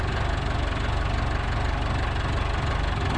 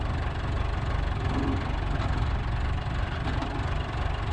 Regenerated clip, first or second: second